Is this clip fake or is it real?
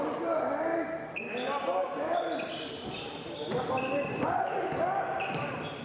fake